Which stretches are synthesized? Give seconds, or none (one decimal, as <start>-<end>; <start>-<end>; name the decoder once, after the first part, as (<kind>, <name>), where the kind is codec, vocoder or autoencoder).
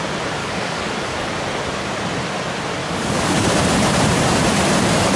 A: 0.4-1.3 (codec, DAC); 2.8-3.6